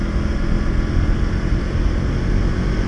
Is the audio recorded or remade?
recorded